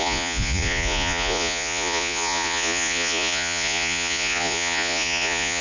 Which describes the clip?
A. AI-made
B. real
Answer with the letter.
A